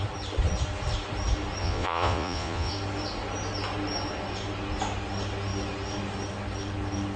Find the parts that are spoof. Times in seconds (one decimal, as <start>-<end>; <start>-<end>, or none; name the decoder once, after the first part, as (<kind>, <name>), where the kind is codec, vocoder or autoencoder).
1.6-2.7 (vocoder, Vocos)